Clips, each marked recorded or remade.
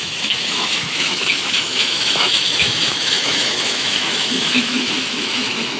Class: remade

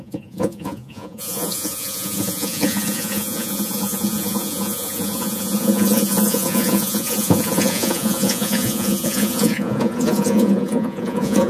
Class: remade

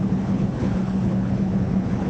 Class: remade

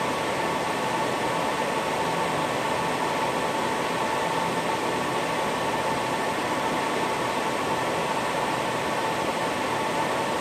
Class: recorded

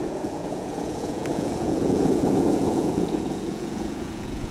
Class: remade